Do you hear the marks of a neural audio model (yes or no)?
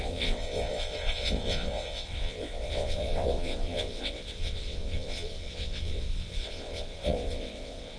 yes